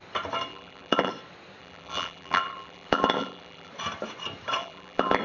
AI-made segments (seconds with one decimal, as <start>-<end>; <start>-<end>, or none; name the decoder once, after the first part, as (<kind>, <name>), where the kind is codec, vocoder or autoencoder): 0.5-1.1 (vocoder, BigVGAN v2); 1.6-3.7; 4.6-5.2